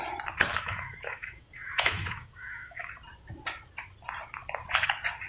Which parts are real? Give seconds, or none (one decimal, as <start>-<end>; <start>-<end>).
0.0-0.5; 2.9-5.3

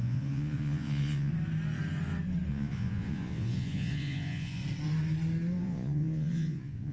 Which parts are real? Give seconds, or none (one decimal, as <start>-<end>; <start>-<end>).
1.3-2.5; 4.6-5.6

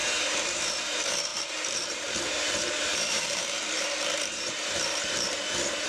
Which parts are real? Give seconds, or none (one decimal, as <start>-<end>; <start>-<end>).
none